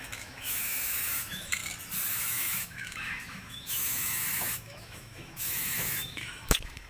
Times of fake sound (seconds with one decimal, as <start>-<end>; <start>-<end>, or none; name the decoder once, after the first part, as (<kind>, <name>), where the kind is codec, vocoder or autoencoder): 0.0-1.6 (autoencoder, DAC-VAE); 2.1-6.9